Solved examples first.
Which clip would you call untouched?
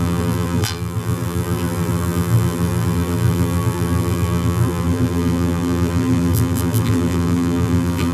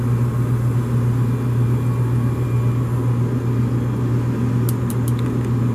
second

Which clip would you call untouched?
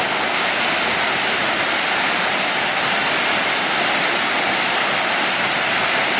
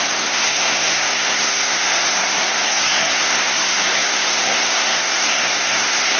first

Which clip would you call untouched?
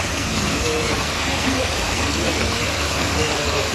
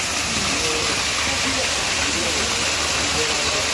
second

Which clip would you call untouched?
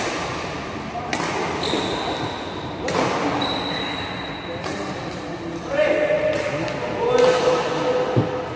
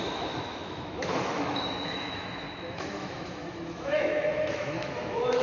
first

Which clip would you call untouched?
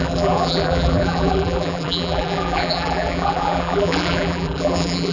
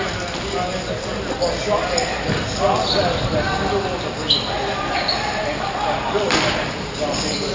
second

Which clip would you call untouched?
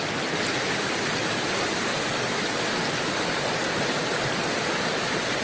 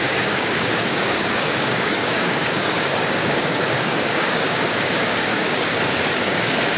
first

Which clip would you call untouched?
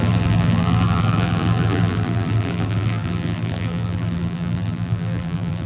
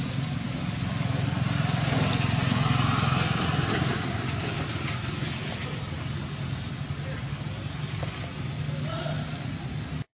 second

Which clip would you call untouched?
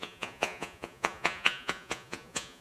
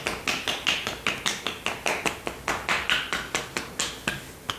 second